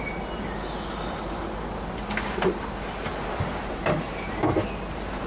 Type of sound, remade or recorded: recorded